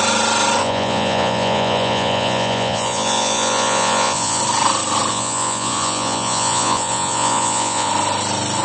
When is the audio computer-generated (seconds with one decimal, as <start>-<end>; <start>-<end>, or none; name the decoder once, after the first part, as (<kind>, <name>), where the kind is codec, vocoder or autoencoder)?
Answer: 0.6-4.4 (vocoder, Vocos); 5.1-7.9